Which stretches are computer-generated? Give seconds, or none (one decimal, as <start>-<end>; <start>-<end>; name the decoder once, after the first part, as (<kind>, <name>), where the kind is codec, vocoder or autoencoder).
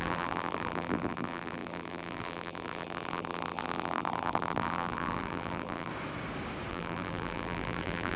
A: 0.0-5.9 (vocoder, BigVGAN v2); 6.7-8.2